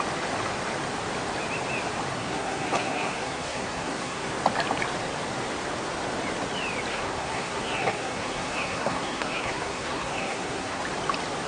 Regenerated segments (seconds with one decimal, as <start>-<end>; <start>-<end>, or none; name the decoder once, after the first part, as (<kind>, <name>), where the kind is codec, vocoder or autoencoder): 2.1-4.3 (codec, SNAC); 6.9-10.8